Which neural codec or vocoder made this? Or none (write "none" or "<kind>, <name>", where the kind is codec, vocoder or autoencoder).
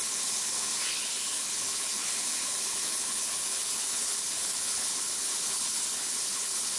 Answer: codec, HILCodec